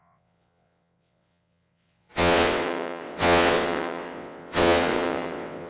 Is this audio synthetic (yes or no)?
yes